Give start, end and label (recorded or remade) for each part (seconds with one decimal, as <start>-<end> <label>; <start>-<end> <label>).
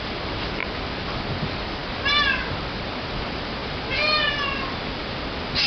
0.0-5.7 recorded